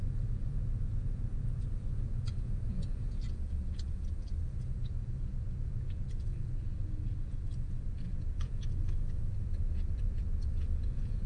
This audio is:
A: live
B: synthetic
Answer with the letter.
B